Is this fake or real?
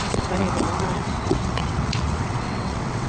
fake